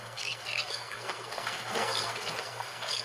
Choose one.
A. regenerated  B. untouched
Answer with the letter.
A